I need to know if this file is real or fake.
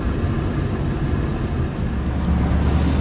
real